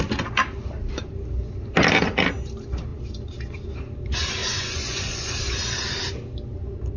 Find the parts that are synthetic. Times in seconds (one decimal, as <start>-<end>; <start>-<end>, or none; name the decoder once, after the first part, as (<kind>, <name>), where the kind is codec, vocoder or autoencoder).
4.4-5.3 (vocoder, Vocos)